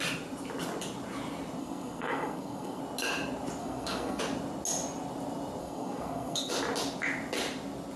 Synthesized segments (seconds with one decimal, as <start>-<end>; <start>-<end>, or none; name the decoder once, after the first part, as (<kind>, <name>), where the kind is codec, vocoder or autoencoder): 1.6-2.8 (codec, SNAC); 3.6-4.2; 5.6-6.5